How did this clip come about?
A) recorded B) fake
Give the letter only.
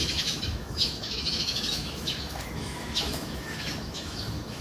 B